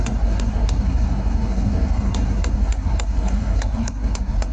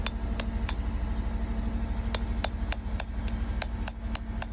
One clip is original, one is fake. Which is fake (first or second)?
first